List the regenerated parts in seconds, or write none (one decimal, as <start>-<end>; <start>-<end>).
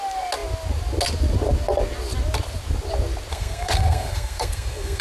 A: 3.3-5.0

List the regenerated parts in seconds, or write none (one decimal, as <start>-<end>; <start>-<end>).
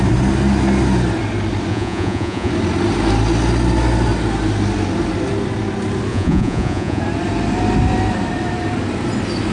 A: 1.7-2.5; 6.1-7.0